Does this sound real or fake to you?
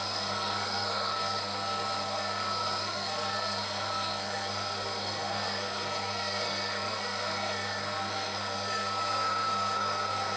fake